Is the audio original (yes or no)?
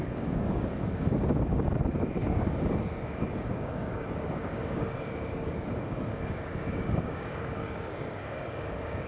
no